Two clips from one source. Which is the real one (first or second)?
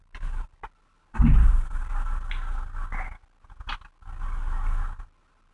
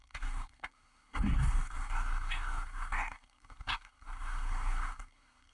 first